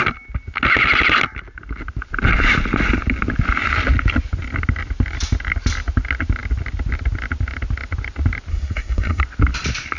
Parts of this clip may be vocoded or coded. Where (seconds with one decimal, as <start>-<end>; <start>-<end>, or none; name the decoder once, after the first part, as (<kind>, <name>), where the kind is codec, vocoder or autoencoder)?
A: 8.5-9.2 (codec, SNAC)